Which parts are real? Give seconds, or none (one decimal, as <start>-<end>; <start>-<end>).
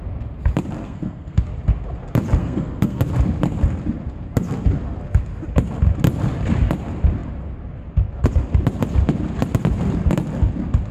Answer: 0.0-0.8; 1.4-2.4; 3.0-10.9